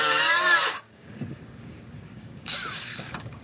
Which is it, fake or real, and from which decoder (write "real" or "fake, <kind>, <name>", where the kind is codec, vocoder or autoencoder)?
fake, codec, DAC